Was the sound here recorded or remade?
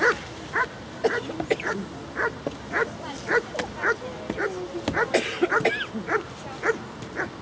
recorded